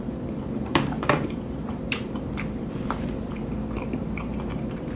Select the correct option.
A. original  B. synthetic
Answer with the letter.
B